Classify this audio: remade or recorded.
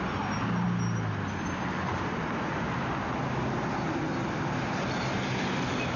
recorded